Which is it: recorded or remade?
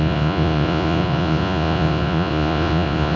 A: remade